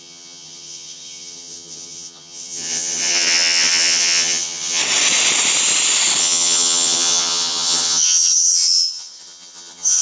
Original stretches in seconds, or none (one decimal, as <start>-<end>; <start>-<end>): 4.8-6.2